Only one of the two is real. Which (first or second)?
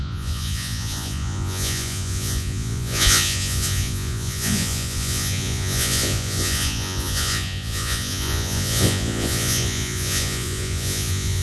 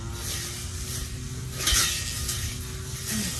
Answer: second